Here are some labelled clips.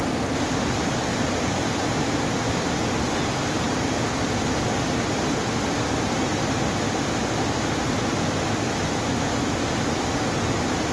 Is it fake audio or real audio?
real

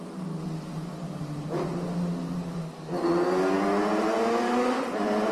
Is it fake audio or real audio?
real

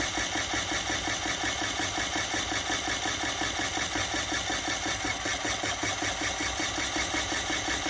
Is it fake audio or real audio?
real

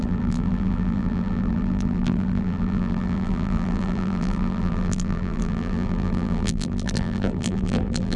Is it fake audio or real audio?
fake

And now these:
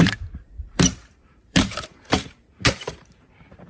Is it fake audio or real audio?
fake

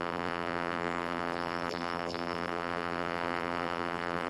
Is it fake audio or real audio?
fake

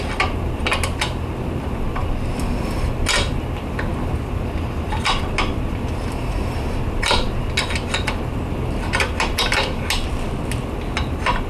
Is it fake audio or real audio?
real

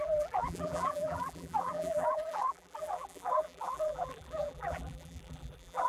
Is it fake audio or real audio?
fake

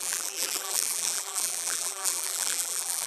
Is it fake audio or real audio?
fake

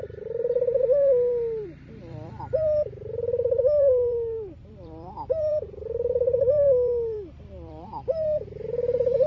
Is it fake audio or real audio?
fake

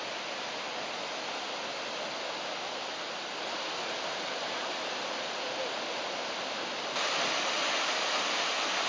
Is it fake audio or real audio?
real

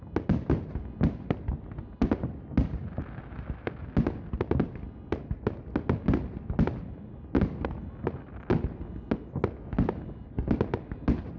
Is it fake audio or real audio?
real